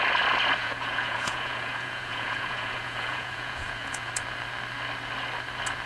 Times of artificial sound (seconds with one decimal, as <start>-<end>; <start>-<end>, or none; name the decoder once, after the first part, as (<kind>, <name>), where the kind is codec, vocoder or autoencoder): 0.6-4.1 (vocoder, Vocos)